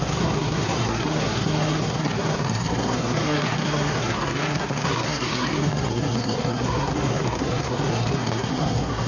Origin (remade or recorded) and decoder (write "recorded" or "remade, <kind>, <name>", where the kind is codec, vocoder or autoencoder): remade, codec, SNAC